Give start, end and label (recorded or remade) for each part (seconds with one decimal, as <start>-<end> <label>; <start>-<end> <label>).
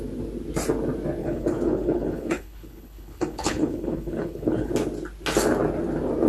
0.0-1.2 recorded; 1.2-4.7 remade; 4.7-6.3 recorded